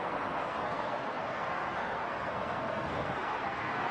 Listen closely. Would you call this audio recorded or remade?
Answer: remade